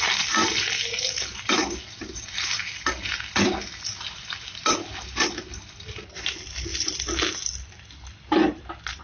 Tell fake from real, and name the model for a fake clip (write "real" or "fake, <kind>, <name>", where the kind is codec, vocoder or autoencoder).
real